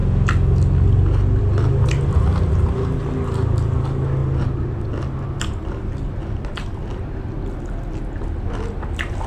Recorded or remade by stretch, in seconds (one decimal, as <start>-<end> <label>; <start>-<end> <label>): 0.0-1.4 recorded; 1.4-4.2 remade; 4.2-8.2 recorded; 8.2-9.3 remade